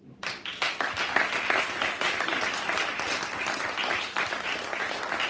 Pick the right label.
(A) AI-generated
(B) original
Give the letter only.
B